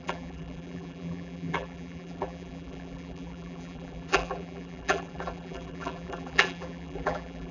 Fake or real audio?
fake